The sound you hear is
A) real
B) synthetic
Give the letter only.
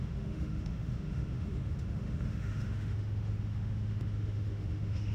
B